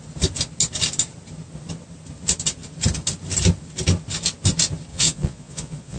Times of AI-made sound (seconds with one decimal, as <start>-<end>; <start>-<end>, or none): 4.9-6.0